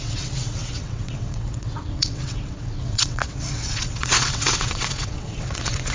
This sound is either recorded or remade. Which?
remade